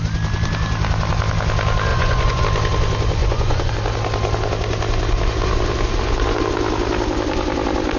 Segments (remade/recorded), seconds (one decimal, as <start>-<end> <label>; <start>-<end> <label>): 0.0-1.9 recorded; 1.9-2.4 remade; 2.4-3.2 recorded; 3.2-3.7 remade; 3.7-8.0 recorded